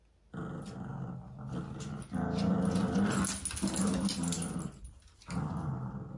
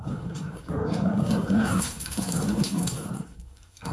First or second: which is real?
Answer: first